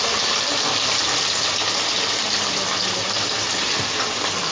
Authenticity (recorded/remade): recorded